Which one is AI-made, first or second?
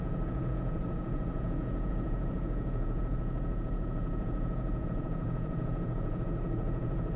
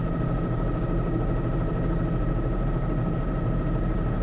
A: first